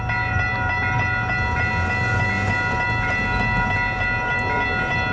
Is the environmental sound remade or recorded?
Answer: recorded